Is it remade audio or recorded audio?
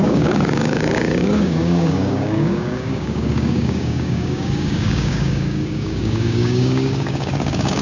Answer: remade